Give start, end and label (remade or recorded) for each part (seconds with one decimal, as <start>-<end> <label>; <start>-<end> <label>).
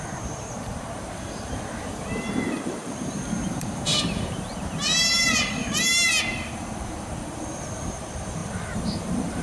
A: 0.0-9.4 remade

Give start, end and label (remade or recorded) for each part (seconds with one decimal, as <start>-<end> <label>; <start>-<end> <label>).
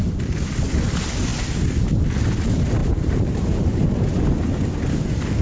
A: 0.0-2.8 recorded; 2.8-3.7 remade; 3.7-5.4 recorded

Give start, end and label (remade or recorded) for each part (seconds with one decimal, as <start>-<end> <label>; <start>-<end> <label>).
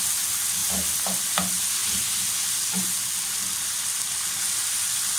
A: 0.0-5.2 recorded